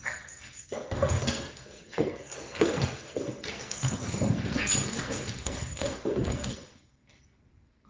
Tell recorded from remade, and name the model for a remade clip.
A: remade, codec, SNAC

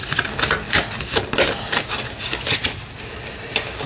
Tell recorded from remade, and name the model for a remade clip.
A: recorded